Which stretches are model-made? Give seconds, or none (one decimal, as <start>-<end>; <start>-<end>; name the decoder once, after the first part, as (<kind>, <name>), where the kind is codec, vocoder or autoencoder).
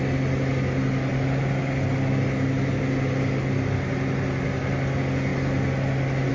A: none